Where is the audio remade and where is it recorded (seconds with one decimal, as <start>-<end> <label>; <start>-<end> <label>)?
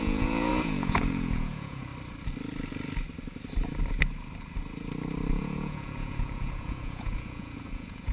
0.0-1.9 remade; 1.9-5.3 recorded; 5.3-8.1 remade